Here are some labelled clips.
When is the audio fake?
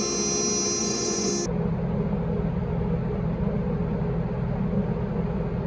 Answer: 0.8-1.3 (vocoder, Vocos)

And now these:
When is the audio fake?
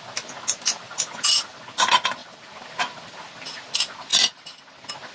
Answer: none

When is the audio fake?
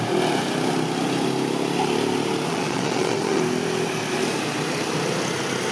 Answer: 2.5-3.4 (vocoder, Vocos)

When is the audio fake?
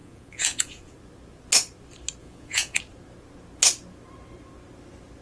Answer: 0.0-0.9 (vocoder, Vocos); 2.2-2.8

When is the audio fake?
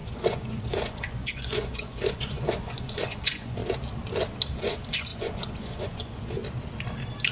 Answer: 0.0-3.6 (vocoder, Vocos); 4.5-6.4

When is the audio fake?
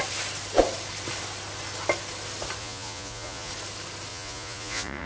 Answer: 2.6-3.5 (vocoder, Vocos); 4.1-5.1